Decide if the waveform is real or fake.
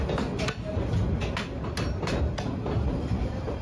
real